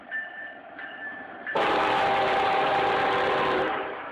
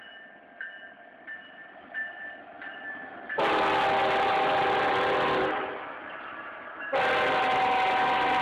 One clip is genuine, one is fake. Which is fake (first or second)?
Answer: first